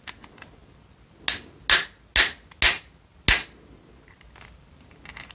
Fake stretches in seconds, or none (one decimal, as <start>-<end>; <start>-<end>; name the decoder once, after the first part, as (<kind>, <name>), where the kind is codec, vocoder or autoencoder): none